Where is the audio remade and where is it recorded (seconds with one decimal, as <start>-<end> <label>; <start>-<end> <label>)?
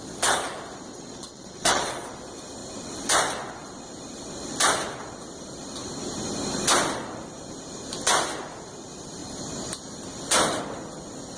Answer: 0.0-0.9 recorded; 0.9-2.1 remade; 2.1-11.4 recorded